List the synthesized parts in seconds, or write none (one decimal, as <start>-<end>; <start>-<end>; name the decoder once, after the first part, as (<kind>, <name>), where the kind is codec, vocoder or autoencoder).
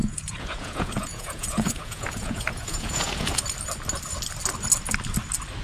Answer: 0.0-3.4 (vocoder, Vocos)